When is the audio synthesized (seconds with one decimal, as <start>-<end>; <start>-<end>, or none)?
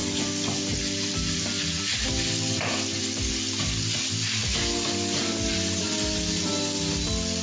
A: none